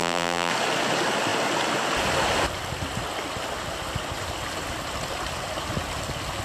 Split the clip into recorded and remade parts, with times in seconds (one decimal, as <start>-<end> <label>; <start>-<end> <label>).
0.0-0.5 remade; 0.5-6.4 recorded